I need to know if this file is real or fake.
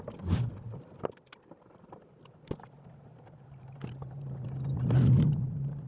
real